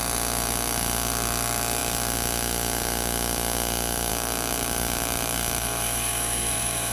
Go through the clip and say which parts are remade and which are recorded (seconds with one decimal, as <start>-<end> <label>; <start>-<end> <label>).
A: 0.0-6.9 remade